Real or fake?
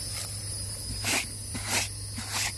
real